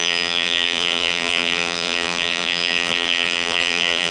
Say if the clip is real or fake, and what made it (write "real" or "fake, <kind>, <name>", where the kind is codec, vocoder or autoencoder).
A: fake, vocoder, BigVGAN v2